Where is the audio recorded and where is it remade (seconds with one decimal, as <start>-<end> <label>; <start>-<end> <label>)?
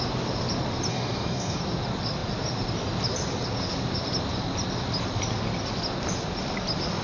0.0-0.9 recorded; 0.9-1.6 remade; 1.6-7.0 recorded